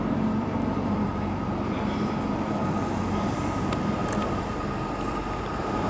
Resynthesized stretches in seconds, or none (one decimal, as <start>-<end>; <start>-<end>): 0.0-1.1; 4.6-5.9